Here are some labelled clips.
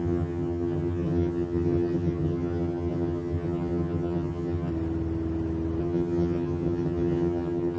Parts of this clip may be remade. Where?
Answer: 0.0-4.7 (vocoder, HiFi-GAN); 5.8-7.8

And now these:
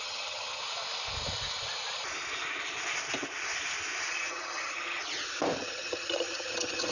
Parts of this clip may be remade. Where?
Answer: 0.0-0.6 (vocoder, HiFi-GAN); 4.1-5.0; 5.6-6.9

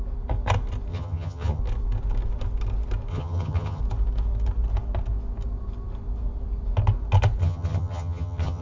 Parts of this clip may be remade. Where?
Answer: 0.9-1.6 (vocoder, HiFi-GAN); 3.1-3.8; 7.4-8.6

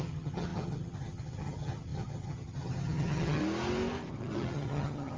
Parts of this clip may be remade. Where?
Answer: 0.0-3.4 (vocoder, HiFi-GAN); 4.1-5.2

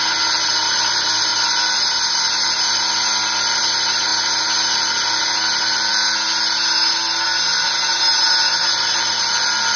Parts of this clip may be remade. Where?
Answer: none